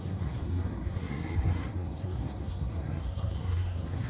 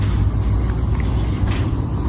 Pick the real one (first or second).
second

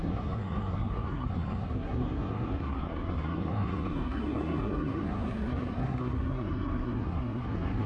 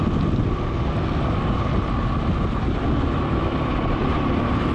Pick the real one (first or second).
second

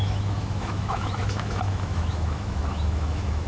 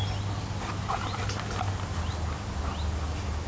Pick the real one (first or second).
second